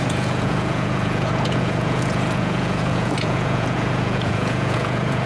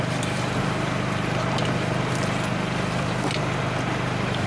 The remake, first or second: first